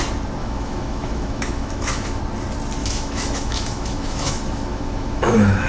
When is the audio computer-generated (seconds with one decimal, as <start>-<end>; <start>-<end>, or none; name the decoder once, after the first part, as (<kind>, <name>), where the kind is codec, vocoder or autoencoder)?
0.4-2.2 (autoencoder, DAC-VAE); 2.8-5.7